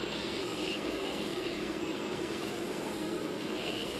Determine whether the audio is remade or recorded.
remade